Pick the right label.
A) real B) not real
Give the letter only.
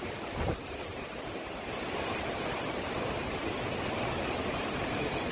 A